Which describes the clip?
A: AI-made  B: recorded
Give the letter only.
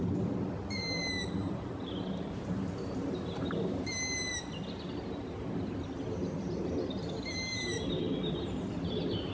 A